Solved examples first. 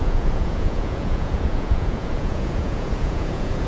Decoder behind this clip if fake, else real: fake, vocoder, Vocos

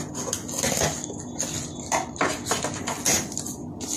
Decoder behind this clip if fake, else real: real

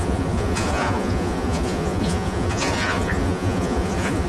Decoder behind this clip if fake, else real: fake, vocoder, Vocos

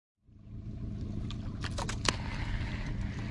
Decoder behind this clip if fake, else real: real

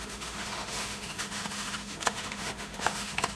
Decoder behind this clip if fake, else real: fake, autoencoder, DAC-VAE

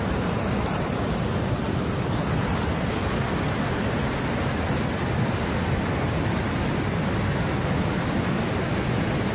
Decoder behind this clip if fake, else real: real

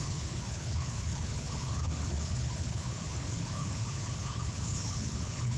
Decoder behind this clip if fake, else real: fake, codec, HILCodec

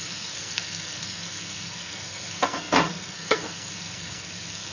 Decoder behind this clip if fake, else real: fake, codec, SNAC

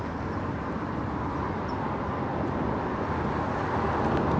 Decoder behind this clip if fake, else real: real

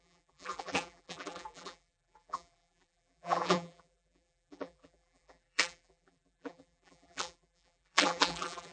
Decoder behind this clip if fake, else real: fake, vocoder, BigVGAN v2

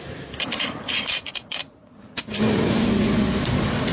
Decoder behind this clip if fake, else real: fake, vocoder, BigVGAN v2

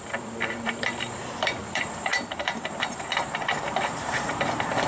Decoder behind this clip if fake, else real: fake, vocoder, BigVGAN v2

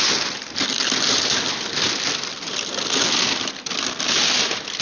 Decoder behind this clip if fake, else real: real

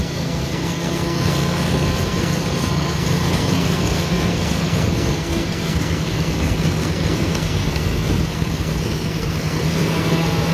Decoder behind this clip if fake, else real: fake, codec, SNAC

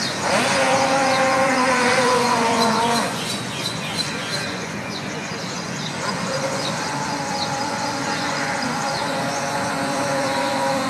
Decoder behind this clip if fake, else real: fake, vocoder, Vocos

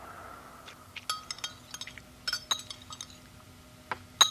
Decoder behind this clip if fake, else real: real